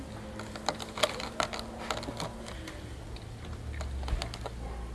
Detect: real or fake real